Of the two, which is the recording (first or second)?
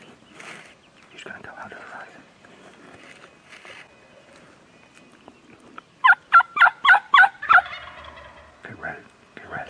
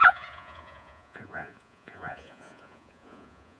first